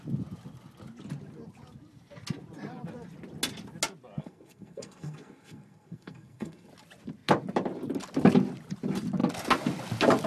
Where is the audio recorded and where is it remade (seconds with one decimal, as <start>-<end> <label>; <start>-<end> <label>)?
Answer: 0.0-4.2 recorded; 4.2-6.7 remade; 6.7-10.3 recorded